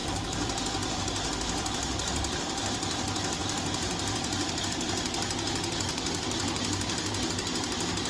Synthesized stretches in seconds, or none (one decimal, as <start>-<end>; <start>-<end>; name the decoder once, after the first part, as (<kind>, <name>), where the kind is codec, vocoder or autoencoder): 0.0-4.6 (vocoder, BigVGAN v2); 5.9-7.3